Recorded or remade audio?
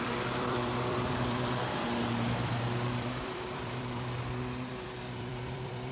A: remade